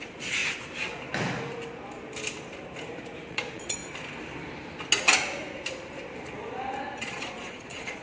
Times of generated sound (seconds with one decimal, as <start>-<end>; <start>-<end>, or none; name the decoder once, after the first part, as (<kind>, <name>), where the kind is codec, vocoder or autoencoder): 0.0-0.4 (vocoder, Vocos); 3.3-3.8; 7.0-8.0